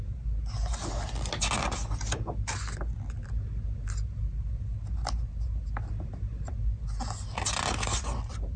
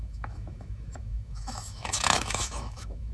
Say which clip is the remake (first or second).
second